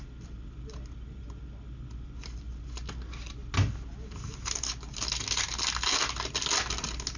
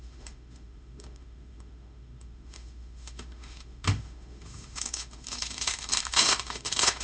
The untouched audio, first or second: first